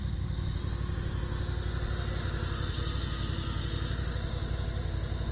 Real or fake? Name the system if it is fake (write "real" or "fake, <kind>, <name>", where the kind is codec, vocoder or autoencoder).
real